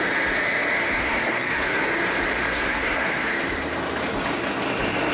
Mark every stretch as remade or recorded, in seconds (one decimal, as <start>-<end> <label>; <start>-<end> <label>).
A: 0.0-1.0 recorded; 1.0-1.8 remade; 1.8-2.5 recorded; 2.5-3.3 remade; 3.3-5.1 recorded